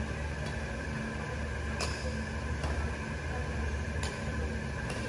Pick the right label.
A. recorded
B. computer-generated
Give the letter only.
A